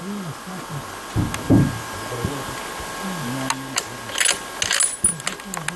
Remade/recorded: recorded